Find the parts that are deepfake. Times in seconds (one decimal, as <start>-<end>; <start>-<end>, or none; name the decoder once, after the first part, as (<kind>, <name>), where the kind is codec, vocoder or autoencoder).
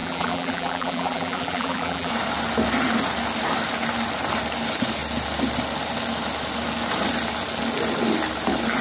0.0-2.1 (vocoder, BigVGAN v2)